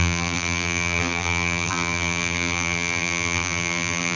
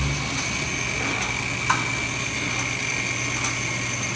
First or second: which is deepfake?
first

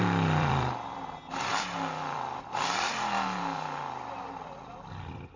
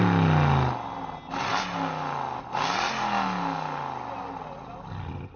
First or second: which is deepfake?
first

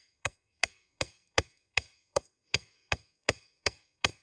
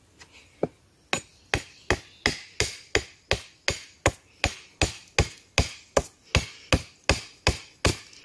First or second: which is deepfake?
first